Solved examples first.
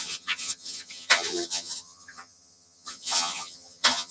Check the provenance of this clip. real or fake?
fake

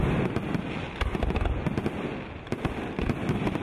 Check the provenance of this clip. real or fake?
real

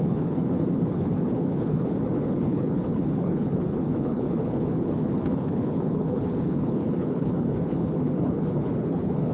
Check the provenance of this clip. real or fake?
fake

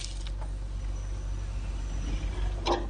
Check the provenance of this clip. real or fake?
real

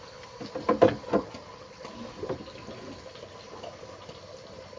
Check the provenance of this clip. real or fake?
real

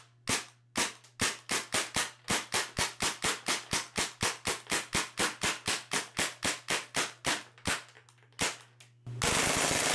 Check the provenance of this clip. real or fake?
real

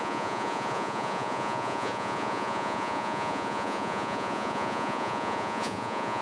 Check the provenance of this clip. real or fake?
fake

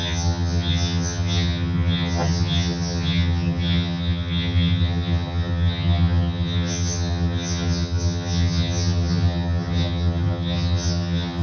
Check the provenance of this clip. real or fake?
fake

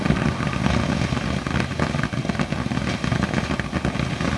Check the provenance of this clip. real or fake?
real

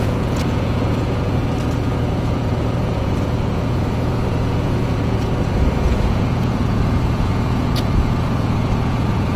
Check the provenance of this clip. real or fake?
fake